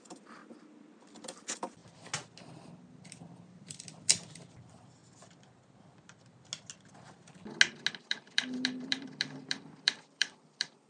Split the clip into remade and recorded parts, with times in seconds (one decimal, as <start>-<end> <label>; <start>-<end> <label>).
0.0-0.4 remade; 0.4-1.1 recorded; 1.1-1.8 remade; 1.8-3.5 recorded; 3.5-5.0 remade; 5.0-7.9 recorded; 7.9-10.9 remade